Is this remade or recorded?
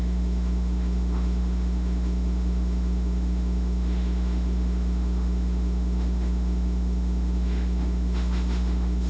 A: remade